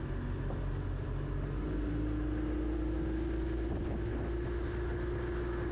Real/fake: real